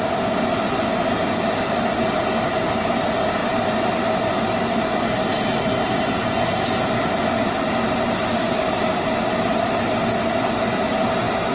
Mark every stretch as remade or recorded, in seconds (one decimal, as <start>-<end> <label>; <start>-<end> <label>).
0.0-11.5 recorded